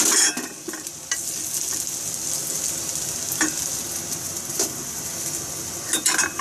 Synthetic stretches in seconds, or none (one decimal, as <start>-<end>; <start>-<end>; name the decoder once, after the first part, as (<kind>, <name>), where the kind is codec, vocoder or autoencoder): none